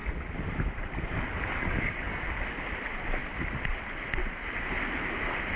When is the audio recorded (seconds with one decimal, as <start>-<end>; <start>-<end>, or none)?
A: 0.0-1.6; 2.2-5.6